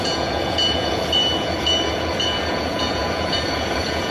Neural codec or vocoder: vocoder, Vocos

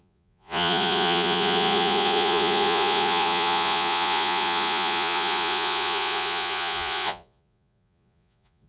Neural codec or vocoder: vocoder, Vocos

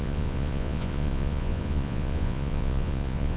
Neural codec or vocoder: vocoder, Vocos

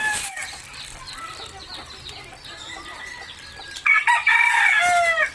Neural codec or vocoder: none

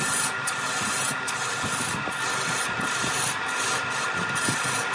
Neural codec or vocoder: none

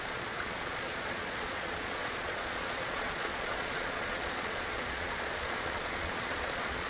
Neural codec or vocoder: vocoder, Vocos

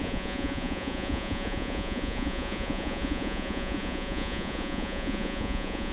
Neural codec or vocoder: vocoder, Vocos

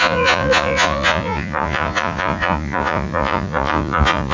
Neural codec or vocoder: vocoder, Vocos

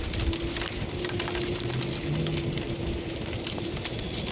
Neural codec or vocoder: none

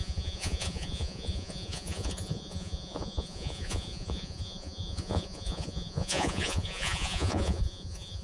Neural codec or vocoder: vocoder, Vocos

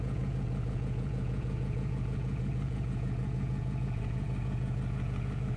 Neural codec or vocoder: vocoder, Vocos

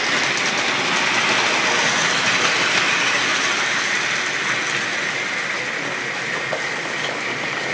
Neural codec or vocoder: none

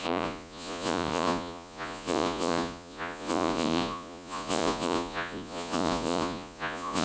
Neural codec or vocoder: vocoder, Vocos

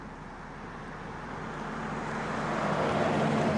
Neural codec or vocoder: none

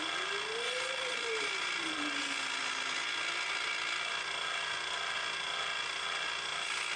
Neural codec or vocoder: none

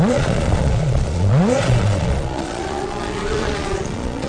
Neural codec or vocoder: vocoder, Vocos